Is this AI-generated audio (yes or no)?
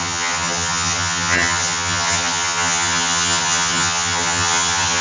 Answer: yes